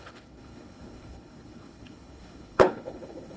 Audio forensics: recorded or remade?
remade